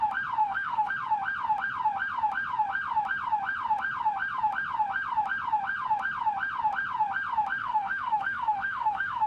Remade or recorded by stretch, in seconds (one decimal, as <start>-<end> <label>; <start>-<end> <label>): 0.0-0.4 recorded; 0.4-0.9 remade; 0.9-7.6 recorded; 7.6-9.3 remade